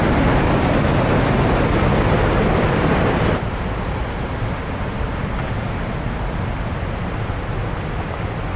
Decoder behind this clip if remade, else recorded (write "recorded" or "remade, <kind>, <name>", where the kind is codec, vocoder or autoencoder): recorded